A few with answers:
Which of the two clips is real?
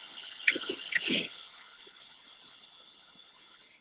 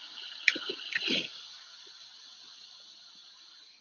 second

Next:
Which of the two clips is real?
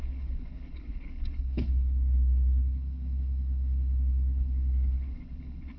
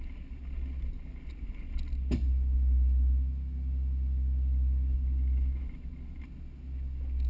second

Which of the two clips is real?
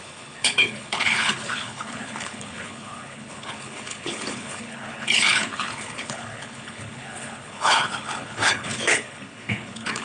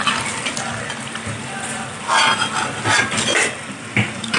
second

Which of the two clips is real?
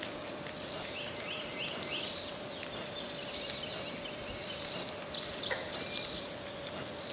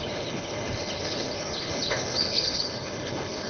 first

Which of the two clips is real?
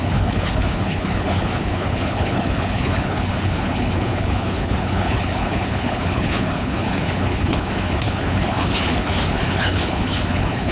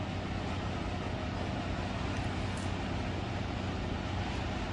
second